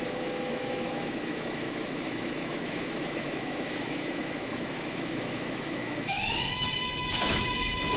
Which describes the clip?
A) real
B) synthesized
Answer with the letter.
B